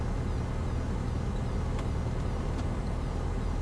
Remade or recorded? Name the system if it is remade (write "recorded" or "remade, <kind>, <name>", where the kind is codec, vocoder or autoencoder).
recorded